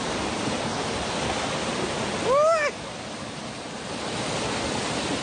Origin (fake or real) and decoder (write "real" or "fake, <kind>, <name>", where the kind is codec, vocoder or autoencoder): real